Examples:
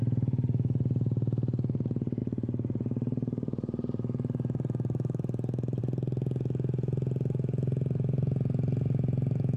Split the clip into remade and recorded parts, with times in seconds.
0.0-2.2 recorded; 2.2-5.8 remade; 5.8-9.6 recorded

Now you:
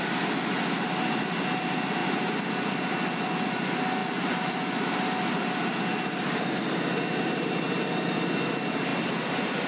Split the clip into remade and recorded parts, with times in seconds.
0.0-9.7 recorded

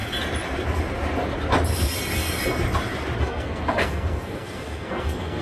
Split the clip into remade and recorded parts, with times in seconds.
0.0-3.2 recorded; 3.2-5.4 remade

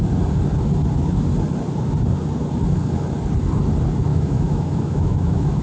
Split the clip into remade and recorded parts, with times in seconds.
0.0-4.1 recorded; 4.1-5.6 remade

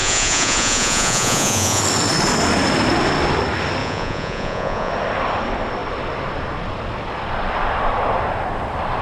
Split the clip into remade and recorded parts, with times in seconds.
0.0-1.8 remade; 1.8-3.8 recorded; 3.8-4.9 remade; 4.9-9.0 recorded

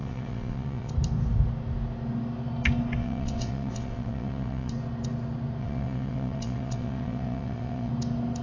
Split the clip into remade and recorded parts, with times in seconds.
0.0-0.9 remade; 0.9-3.0 recorded; 3.0-4.7 remade; 4.7-5.6 recorded; 5.6-7.9 remade; 7.9-8.4 recorded